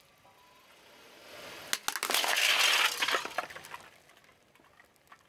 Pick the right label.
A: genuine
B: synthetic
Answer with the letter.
A